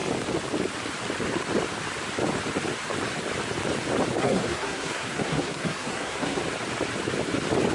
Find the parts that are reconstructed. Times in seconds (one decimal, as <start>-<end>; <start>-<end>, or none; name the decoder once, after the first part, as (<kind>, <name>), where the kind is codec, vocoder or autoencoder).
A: 4.2-6.4 (codec, SNAC)